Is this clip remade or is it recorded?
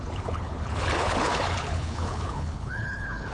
remade